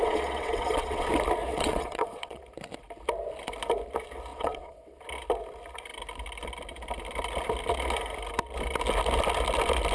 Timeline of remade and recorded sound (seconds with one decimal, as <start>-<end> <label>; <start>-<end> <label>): 0.0-1.1 remade; 1.1-1.5 recorded; 1.5-2.4 remade; 2.4-4.3 recorded; 4.3-5.0 remade; 5.0-9.9 recorded